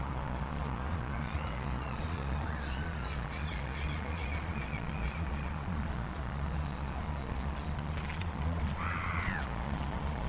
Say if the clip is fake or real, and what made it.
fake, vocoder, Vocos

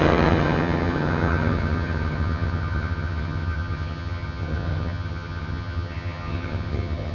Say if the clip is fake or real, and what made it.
fake, vocoder, HiFi-GAN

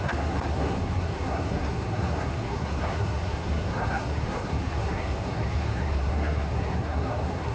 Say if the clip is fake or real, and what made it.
fake, codec, SNAC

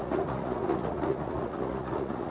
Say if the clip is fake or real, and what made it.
fake, vocoder, Vocos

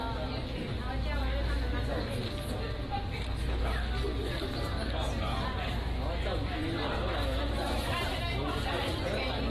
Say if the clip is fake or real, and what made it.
real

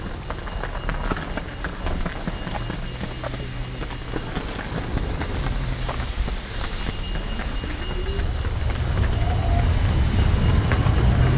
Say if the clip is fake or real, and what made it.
real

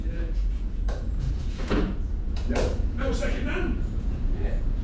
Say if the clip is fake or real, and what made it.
fake, vocoder, Vocos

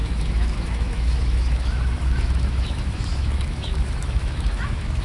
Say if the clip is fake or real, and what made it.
fake, autoencoder, DAC-VAE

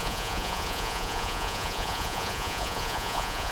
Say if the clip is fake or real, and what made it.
fake, vocoder, Vocos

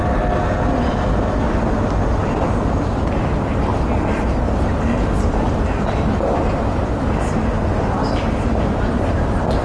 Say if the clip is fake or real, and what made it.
real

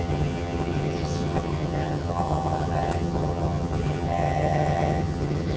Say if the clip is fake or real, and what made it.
fake, vocoder, HiFi-GAN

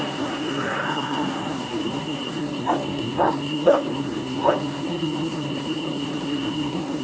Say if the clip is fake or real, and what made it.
fake, codec, SNAC